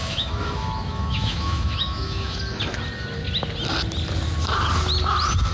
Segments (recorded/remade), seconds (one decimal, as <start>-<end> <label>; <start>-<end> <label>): 0.0-2.4 remade; 2.4-5.5 recorded